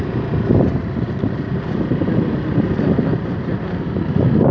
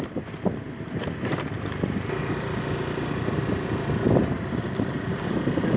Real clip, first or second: second